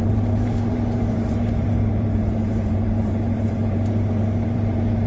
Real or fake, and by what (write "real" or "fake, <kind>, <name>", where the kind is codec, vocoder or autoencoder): fake, vocoder, BigVGAN v2